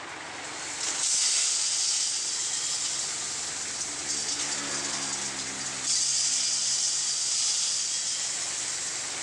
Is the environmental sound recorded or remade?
recorded